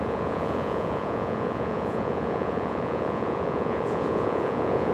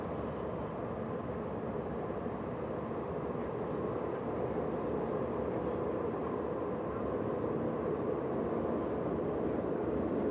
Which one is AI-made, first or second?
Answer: first